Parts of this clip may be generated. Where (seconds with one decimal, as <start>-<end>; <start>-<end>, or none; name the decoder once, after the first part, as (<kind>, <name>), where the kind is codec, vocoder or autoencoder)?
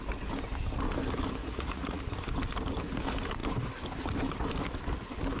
1.4-2.0 (vocoder, Vocos)